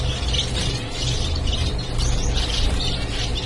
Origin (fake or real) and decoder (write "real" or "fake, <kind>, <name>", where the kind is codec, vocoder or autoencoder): real